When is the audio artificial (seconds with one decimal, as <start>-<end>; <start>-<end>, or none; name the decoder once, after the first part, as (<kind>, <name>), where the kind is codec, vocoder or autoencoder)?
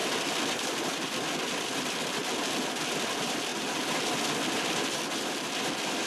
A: 0.6-3.5 (vocoder, BigVGAN v2); 5.3-6.1